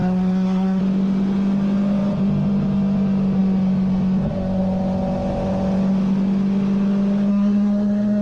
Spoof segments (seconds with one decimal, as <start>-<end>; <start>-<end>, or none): 0.0-0.8; 7.3-8.2